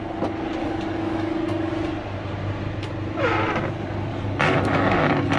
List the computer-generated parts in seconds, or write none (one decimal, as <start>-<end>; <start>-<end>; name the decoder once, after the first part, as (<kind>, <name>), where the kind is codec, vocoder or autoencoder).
0.6-1.7 (codec, DAC); 4.1-5.4